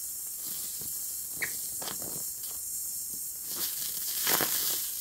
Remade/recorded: recorded